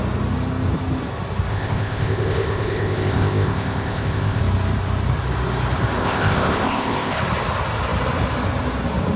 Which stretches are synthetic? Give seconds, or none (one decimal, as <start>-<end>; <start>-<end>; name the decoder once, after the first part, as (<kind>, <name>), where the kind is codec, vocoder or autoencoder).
1.5-4.4 (codec, ZipCodec); 6.0-7.2